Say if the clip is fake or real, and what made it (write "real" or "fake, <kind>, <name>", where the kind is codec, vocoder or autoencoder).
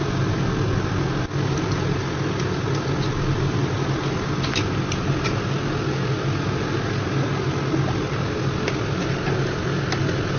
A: real